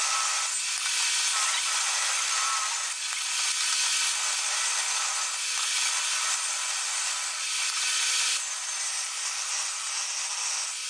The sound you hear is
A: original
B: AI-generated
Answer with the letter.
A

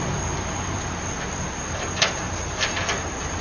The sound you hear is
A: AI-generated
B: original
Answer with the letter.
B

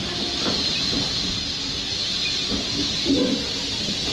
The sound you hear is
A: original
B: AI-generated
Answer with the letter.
A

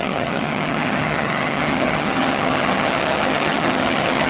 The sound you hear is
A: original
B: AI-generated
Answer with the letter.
B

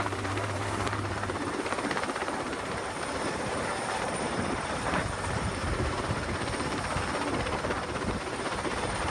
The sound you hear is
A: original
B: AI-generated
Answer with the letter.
B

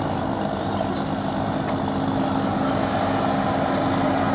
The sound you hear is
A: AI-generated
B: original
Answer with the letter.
B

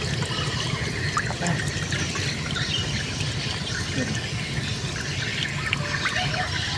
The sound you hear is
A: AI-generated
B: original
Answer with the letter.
B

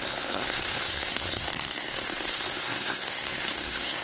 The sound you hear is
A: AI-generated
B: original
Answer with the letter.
A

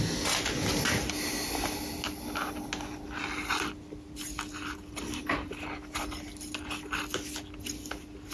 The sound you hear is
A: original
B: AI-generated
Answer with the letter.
A